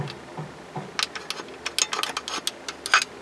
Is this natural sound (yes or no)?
yes